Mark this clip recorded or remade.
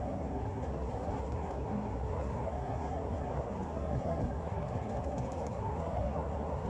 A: remade